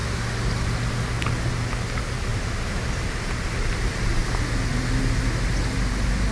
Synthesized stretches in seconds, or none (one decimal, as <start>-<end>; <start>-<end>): 2.3-4.1; 4.7-5.2